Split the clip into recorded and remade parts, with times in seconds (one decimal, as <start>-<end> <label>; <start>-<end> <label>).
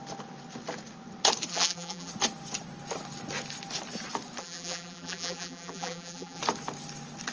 0.0-1.5 recorded; 1.5-2.1 remade; 2.1-4.4 recorded; 4.4-6.4 remade; 6.4-7.3 recorded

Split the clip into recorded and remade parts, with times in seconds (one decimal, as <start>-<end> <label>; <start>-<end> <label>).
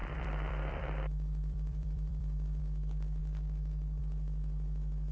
0.0-2.6 remade; 2.6-3.2 recorded; 3.2-4.0 remade; 4.0-5.1 recorded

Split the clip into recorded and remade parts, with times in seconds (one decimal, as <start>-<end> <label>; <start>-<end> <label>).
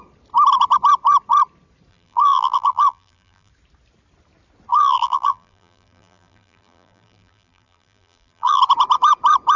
0.0-1.9 recorded; 1.9-3.5 remade; 3.5-4.7 recorded; 4.7-8.6 remade; 8.6-9.6 recorded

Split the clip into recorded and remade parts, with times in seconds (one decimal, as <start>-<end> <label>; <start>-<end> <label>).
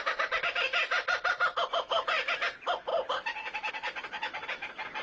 0.0-5.0 recorded